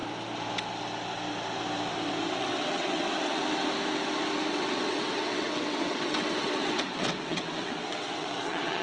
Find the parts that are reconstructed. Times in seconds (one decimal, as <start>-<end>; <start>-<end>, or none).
2.3-3.4; 4.5-8.8